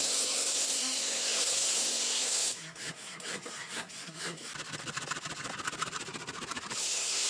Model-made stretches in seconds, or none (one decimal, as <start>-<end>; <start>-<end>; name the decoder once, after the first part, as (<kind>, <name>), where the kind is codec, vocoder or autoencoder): 0.0-4.5 (codec, SNAC); 6.8-7.3

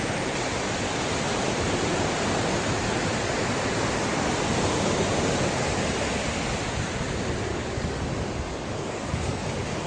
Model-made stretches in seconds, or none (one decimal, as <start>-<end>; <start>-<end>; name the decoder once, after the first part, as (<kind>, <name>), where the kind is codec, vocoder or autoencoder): 7.5-9.9 (codec, DAC)

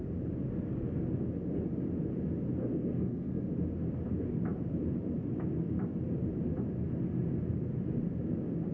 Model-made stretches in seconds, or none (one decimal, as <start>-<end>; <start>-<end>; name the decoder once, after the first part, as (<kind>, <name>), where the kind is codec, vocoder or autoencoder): 2.6-3.4 (codec, SNAC)

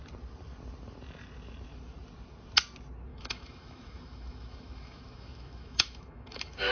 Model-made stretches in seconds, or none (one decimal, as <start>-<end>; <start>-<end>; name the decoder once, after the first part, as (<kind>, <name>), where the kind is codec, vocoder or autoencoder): 3.1-6.7 (autoencoder, DAC-VAE)

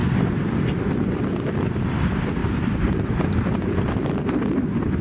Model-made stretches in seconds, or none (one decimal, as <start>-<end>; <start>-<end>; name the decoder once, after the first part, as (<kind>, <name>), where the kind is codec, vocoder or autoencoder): 2.4-5.0 (vocoder, BigVGAN v2)

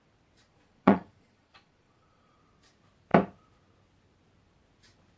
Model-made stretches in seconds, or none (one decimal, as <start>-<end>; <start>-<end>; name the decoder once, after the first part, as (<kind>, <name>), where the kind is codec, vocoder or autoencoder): 0.4-2.4 (vocoder, Vocos)